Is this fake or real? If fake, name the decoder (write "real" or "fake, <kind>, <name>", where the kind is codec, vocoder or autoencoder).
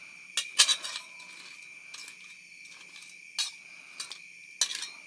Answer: real